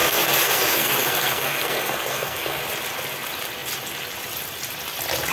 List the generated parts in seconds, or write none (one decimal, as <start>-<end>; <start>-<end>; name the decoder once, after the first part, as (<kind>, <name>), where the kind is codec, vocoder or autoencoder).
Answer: 0.0-2.6 (codec, SNAC)